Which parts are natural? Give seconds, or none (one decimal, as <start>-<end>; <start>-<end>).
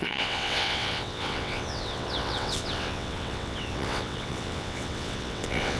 none